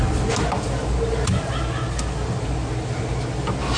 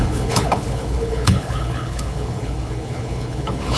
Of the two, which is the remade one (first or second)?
second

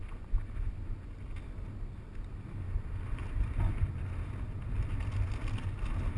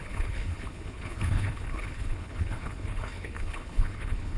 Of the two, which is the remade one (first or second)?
second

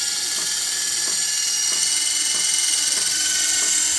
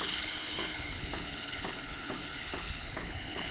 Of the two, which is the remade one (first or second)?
second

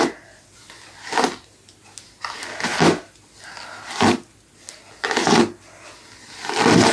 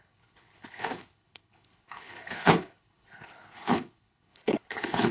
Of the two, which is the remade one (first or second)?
second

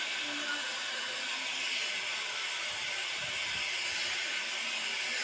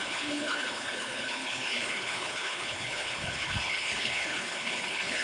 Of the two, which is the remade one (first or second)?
second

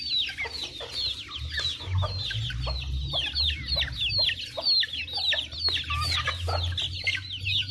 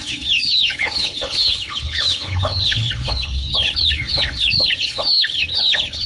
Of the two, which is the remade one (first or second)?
second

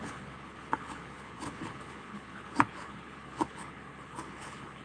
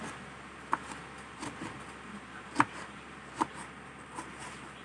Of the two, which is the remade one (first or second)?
first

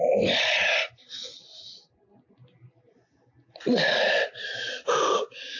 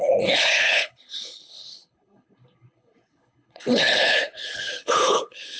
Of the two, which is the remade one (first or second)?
second